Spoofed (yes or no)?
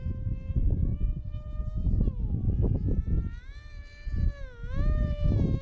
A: no